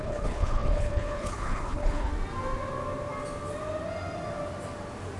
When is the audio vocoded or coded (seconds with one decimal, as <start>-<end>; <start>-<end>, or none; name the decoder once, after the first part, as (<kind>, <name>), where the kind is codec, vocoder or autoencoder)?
0.0-2.1 (codec, HILCodec)